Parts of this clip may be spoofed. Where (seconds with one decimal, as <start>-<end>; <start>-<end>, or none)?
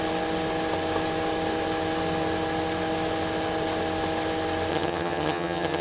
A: 4.7-5.8